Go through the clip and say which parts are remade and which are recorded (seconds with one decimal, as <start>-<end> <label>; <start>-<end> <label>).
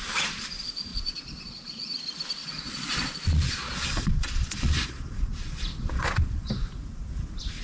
0.0-0.9 recorded; 0.9-1.9 remade; 1.9-2.4 recorded; 2.4-6.5 remade; 6.5-7.6 recorded